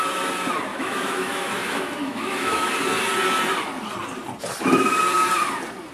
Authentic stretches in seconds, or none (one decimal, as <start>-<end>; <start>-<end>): 0.0-0.7; 2.7-5.9